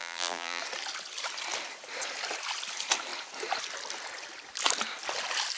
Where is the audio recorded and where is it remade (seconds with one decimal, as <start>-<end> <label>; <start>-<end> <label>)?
0.0-0.6 remade; 0.6-5.6 recorded